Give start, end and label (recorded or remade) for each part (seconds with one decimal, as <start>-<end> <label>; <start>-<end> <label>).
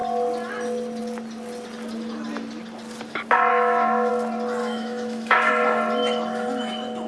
0.0-3.5 recorded; 3.5-4.1 remade; 4.1-4.6 recorded; 4.6-5.5 remade; 5.5-7.1 recorded